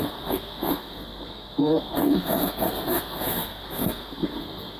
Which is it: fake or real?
fake